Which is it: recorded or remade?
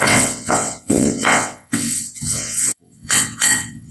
remade